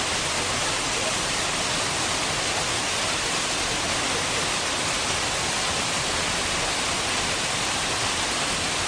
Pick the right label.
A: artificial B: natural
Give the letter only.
B